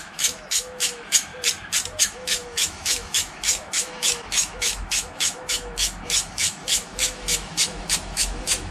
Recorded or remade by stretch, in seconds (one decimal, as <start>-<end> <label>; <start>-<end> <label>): 0.0-1.3 remade; 1.3-2.0 recorded; 2.0-8.7 remade